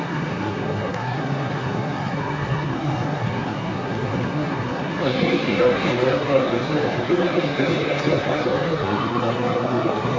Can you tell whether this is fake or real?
fake